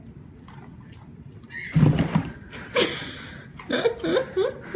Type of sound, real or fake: real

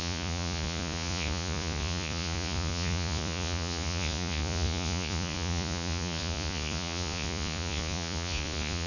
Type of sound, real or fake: fake